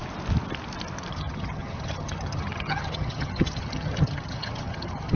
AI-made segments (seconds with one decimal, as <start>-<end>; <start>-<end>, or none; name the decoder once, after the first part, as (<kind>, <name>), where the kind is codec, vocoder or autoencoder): 1.1-5.2 (vocoder, HiFi-GAN)